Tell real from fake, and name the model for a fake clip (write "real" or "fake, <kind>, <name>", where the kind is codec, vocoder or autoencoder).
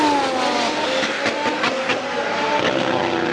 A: real